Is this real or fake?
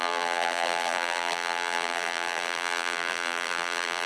fake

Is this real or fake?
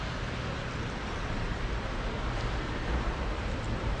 real